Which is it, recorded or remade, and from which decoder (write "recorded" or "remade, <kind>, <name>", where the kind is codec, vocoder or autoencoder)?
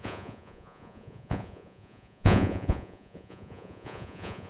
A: remade, vocoder, Vocos